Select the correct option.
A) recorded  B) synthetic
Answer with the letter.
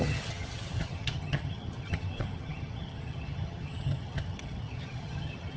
B